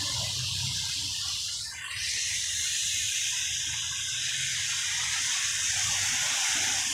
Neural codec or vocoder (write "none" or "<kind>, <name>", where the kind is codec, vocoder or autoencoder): none